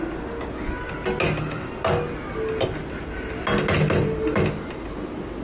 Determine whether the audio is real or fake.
real